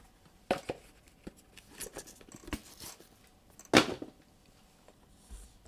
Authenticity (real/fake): real